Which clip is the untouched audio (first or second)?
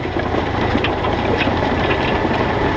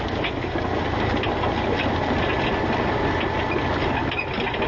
second